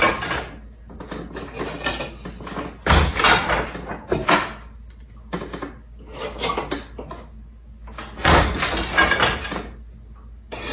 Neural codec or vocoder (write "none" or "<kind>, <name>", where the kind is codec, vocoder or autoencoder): none